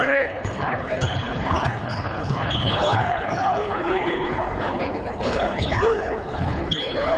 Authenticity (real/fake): fake